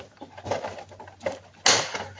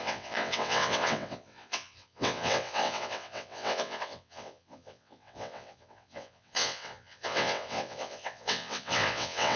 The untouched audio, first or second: first